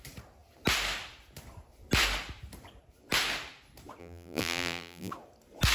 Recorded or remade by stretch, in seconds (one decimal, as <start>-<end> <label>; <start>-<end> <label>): 0.0-4.0 recorded; 4.0-5.1 remade; 5.1-5.7 recorded